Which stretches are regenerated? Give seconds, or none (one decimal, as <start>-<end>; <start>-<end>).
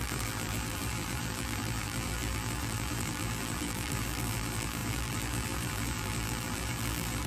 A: 0.0-7.3